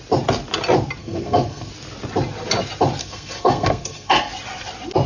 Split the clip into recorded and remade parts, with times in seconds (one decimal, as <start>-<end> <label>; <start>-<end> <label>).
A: 0.0-1.0 recorded; 1.0-1.7 remade; 1.7-3.0 recorded; 3.0-4.3 remade; 4.3-5.1 recorded